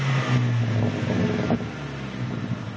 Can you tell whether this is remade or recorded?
recorded